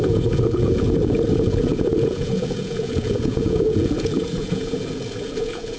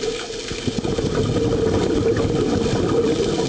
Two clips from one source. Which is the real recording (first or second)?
second